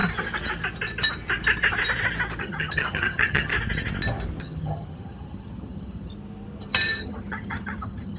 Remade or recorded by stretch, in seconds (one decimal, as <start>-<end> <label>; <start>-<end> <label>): 0.0-2.4 recorded; 2.4-3.5 remade; 3.5-4.4 recorded; 4.4-6.1 remade; 6.1-7.0 recorded; 7.0-8.2 remade